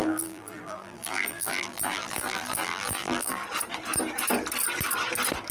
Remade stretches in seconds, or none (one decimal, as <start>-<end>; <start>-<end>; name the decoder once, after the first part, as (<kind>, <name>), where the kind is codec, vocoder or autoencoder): 0.0-3.4 (vocoder, BigVGAN v2)